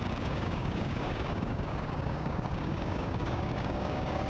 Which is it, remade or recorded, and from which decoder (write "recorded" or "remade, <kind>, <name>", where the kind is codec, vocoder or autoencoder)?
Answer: remade, codec, DAC